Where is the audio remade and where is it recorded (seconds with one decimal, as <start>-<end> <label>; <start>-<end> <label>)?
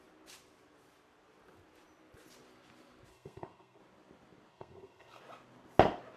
0.0-3.1 recorded; 3.1-3.8 remade; 3.8-4.5 recorded; 4.5-5.2 remade; 5.2-6.2 recorded